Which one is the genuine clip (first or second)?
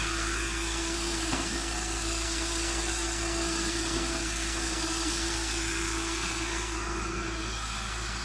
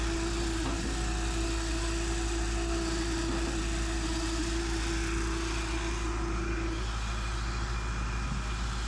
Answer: second